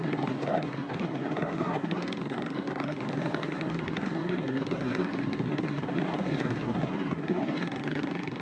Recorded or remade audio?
remade